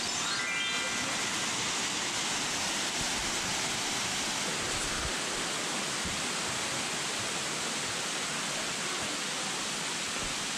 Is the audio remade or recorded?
recorded